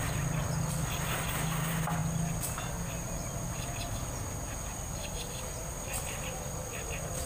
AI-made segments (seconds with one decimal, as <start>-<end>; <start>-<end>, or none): none

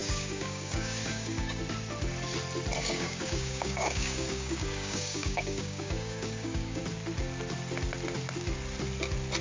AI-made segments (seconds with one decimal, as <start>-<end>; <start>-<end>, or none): 0.0-1.6; 2.8-6.8

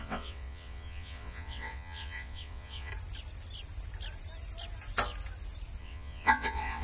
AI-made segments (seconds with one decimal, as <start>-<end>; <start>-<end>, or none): 0.0-2.9; 5.8-6.8

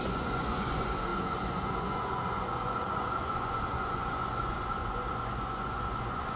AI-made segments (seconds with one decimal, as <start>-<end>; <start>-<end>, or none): 0.0-6.4

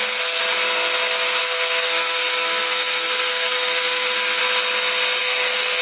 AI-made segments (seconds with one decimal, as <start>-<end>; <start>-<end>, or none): 0.0-0.4; 1.4-4.4; 5.2-5.8

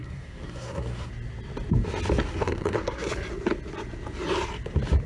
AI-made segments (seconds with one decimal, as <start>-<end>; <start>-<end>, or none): 0.0-1.1; 2.4-3.1

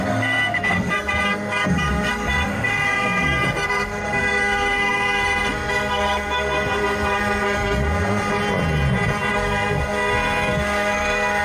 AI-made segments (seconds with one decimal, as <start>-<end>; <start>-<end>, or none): 0.0-8.3; 9.3-11.4